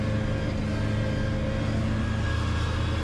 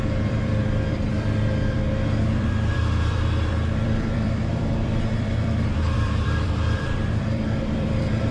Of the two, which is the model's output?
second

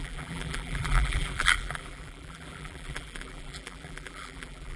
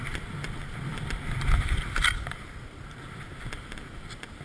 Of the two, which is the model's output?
first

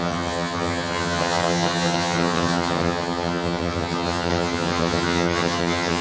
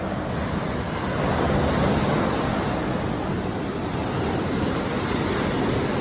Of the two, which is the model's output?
first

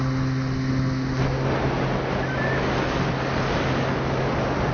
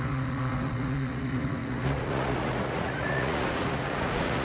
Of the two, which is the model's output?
second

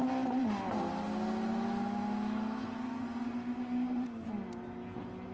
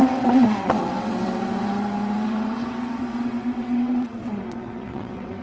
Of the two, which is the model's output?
second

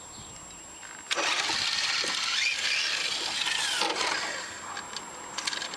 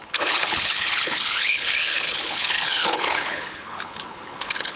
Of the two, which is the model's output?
second